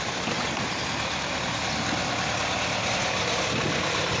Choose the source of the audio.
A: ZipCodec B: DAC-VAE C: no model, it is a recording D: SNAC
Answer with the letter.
C